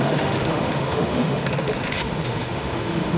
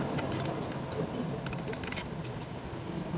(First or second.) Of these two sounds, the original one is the second